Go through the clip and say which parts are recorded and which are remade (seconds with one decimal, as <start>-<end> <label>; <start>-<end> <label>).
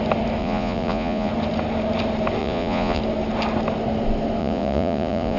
0.0-0.4 recorded; 0.4-1.3 remade; 1.3-2.4 recorded; 2.4-3.0 remade; 3.0-4.4 recorded; 4.4-5.4 remade